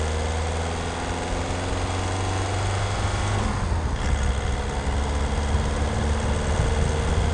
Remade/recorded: recorded